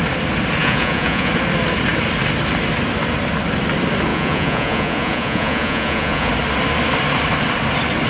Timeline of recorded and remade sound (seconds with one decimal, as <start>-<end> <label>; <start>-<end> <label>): 0.0-0.6 recorded; 0.6-1.3 remade; 1.3-4.1 recorded; 4.1-6.3 remade; 6.3-8.1 recorded